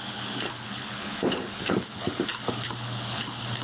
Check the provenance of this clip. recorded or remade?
remade